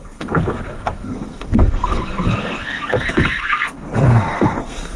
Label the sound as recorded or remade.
remade